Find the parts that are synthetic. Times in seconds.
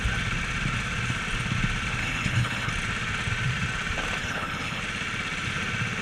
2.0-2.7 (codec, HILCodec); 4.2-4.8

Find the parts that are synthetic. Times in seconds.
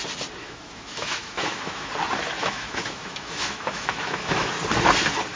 0.4-1.9 (autoencoder, DAC-VAE); 2.4-4.5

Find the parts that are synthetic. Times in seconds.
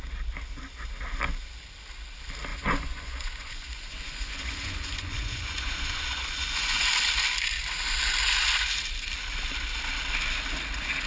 2.5-6.9 (vocoder, Vocos)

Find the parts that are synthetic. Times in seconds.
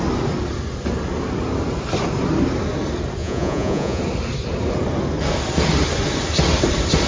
3.2-4.0 (vocoder, Vocos)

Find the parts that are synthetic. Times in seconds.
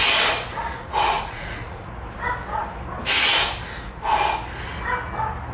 0.5-1.9 (vocoder, Vocos)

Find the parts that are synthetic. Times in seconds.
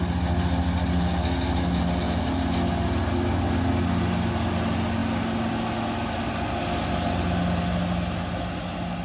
none